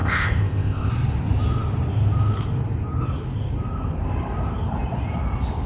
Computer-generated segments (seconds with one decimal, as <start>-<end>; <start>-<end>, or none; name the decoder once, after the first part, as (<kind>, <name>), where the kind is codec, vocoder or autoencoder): 0.0-0.9 (codec, ZipCodec)